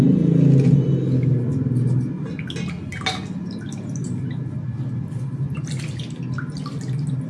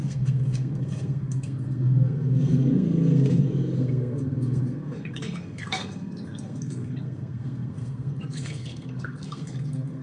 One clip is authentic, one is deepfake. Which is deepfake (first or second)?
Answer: second